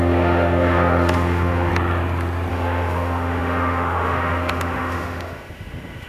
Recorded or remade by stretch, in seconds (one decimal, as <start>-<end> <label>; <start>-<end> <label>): 0.0-1.7 remade; 1.7-2.5 recorded; 2.5-6.1 remade